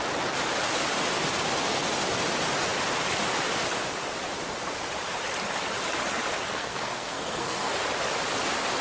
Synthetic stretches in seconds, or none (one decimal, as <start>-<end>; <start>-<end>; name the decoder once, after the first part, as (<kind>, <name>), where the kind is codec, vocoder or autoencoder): 6.5-7.7 (codec, SNAC)